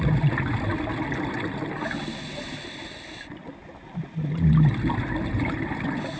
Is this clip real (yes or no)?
yes